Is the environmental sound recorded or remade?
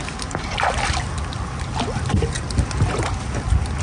recorded